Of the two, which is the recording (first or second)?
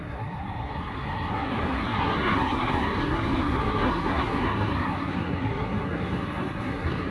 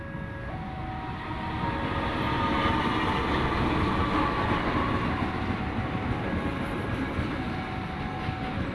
second